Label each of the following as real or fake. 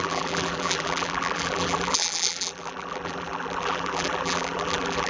fake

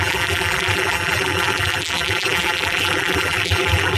fake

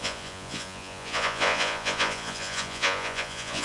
fake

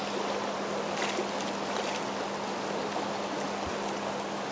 real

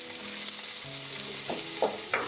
real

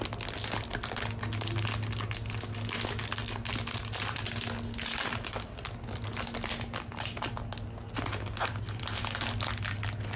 real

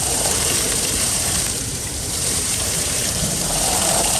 fake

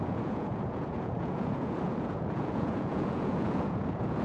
fake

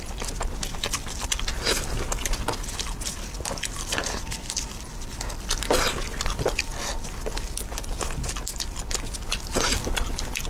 real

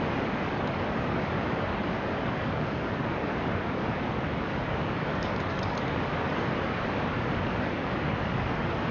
fake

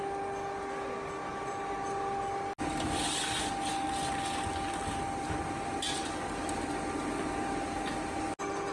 real